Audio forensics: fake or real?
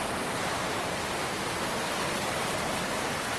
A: real